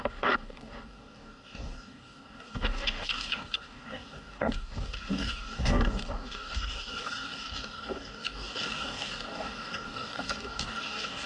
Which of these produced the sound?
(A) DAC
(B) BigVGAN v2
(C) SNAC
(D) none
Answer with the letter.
A